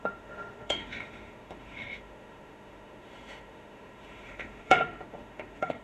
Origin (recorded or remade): remade